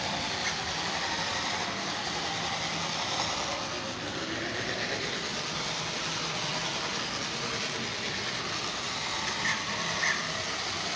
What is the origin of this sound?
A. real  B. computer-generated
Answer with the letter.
A